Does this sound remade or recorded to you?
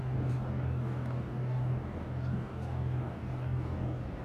remade